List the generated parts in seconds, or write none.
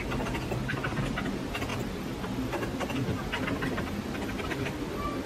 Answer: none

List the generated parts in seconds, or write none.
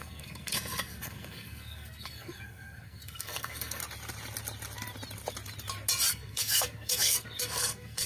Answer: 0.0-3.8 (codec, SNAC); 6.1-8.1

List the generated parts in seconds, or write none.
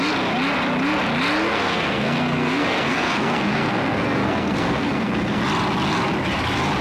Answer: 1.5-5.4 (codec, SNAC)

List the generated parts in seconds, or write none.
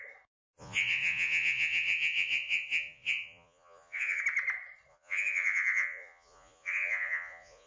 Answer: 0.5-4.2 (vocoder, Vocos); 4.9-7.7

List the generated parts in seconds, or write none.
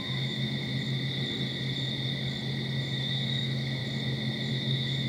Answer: 0.0-0.7 (autoencoder, DAC-VAE); 2.8-3.8; 4.5-5.1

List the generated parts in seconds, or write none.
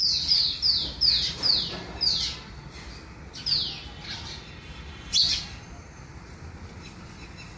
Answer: none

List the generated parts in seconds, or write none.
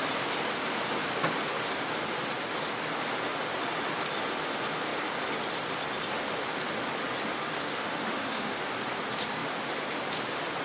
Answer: 7.6-8.6 (autoencoder, DAC-VAE)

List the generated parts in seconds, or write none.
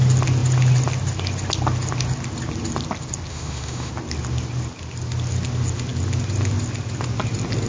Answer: 3.3-3.9 (autoencoder, DAC-VAE)